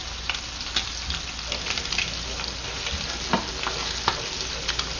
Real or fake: real